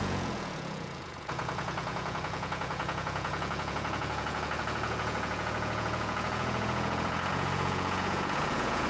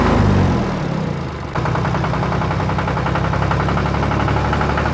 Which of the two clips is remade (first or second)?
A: first